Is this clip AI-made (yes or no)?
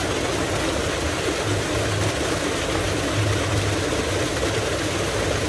no